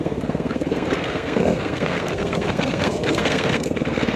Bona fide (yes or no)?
no